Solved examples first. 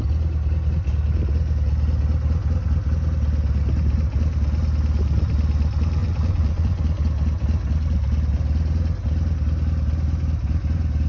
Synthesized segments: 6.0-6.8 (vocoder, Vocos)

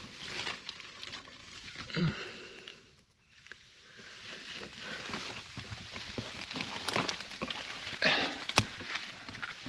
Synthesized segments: 2.7-4.1 (autoencoder, DAC-VAE)

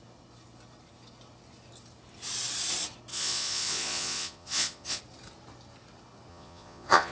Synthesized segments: 3.1-5.0 (vocoder, Vocos); 6.3-7.1